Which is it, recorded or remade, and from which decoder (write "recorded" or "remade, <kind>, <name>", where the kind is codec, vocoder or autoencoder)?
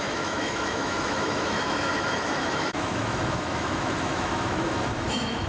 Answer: remade, autoencoder, DAC-VAE